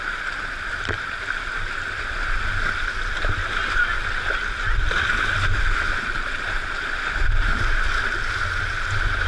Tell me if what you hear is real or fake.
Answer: real